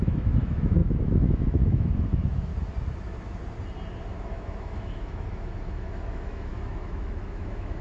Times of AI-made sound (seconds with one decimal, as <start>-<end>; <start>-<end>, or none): 0.0-2.5; 4.2-7.8